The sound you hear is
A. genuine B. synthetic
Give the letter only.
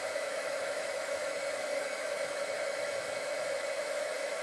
B